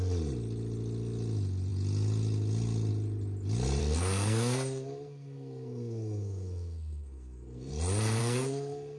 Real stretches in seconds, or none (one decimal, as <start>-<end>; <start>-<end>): 0.0-3.8; 7.7-8.2